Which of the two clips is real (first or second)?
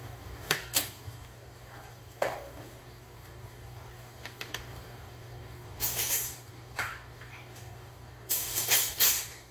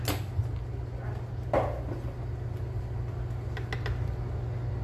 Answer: second